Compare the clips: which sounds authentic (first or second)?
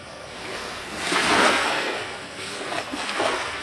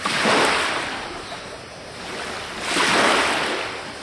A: second